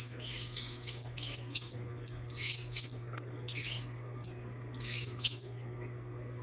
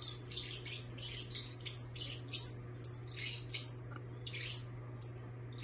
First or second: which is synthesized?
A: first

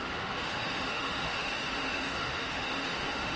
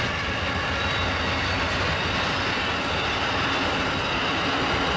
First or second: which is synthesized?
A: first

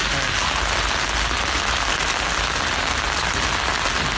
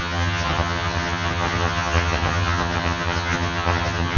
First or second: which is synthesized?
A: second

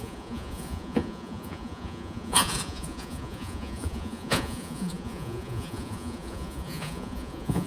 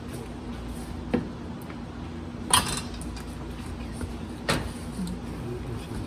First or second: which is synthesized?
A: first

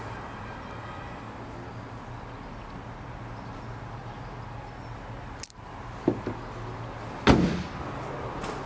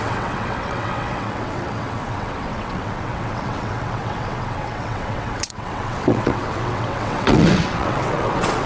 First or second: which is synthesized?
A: second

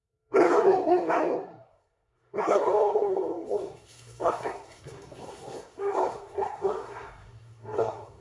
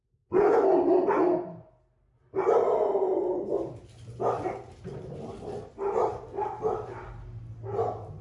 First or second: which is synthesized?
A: first